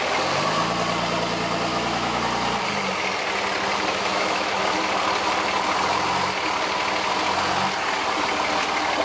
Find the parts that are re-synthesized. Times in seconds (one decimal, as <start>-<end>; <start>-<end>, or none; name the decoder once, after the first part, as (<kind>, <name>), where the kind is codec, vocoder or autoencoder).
1.7-2.2 (autoencoder, DAC-VAE); 3.9-4.6